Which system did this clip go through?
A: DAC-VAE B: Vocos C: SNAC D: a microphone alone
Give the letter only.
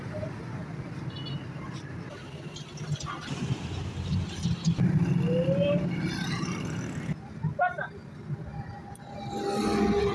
D